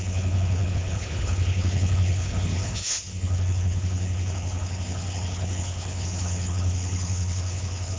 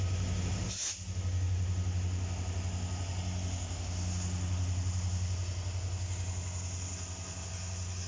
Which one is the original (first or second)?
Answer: second